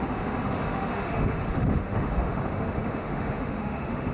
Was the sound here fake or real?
fake